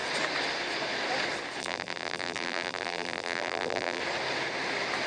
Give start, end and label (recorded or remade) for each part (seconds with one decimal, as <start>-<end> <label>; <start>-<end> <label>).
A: 0.0-1.6 recorded; 1.6-4.0 remade; 4.0-5.1 recorded